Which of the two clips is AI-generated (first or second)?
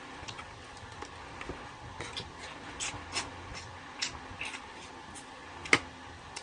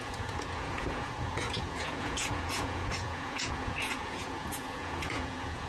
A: second